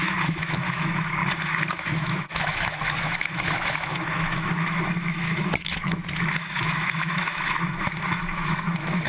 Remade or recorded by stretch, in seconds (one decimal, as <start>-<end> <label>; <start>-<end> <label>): 0.0-1.2 remade; 1.2-1.7 recorded; 1.7-9.1 remade